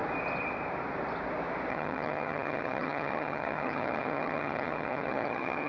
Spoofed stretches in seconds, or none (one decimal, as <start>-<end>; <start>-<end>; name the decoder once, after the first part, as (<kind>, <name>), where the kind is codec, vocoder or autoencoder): 1.7-5.7 (vocoder, HiFi-GAN)